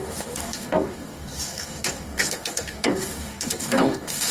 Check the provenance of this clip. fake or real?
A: fake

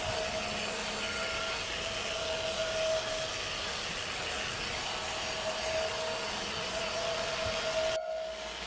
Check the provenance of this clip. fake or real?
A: real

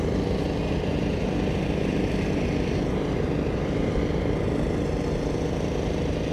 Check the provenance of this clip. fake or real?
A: real